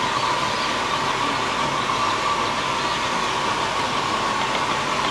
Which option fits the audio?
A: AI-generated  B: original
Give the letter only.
B